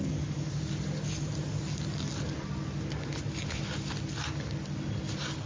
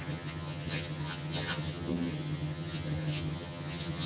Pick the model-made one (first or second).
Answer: second